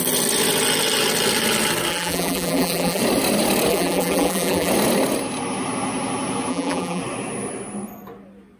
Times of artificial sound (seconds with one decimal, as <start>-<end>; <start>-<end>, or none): 1.9-3.0; 3.7-4.7; 6.5-7.0